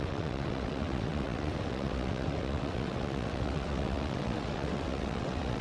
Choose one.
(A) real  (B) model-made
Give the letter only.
B